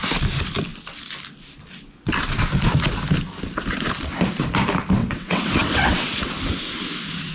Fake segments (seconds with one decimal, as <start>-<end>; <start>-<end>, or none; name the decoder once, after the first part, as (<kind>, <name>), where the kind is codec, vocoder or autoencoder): 5.0-6.3 (vocoder, WaveNeXt)